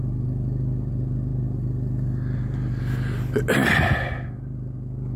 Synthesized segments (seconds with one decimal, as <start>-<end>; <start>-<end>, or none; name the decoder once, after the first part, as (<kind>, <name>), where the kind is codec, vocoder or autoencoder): none